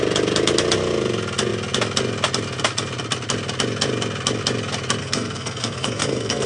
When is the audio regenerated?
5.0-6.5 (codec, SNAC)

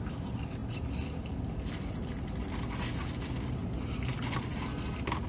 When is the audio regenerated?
3.6-4.1 (vocoder, BigVGAN v2)

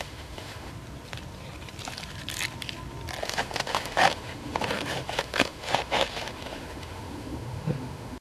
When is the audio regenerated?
0.0-0.7 (autoencoder, DAC-VAE); 3.2-8.2

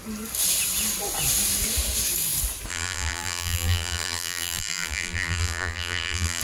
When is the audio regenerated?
2.7-6.4 (vocoder, BigVGAN v2)